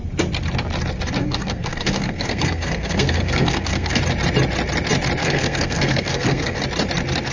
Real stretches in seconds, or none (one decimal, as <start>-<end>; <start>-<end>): 0.0-1.2; 4.0-5.2; 6.6-7.3